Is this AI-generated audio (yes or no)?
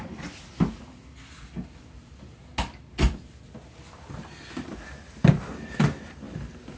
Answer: no